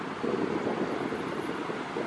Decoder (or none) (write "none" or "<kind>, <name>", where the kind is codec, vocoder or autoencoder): none